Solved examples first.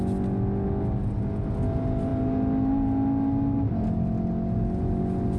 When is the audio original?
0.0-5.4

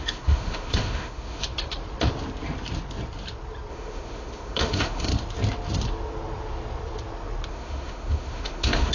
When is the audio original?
1.4-3.7; 5.1-7.5